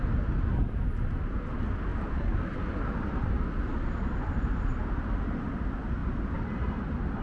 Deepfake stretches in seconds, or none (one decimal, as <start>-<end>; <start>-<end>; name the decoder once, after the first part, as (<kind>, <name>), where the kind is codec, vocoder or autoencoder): none